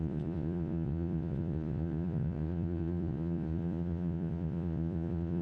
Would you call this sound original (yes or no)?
no